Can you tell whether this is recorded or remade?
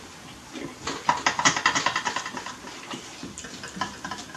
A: recorded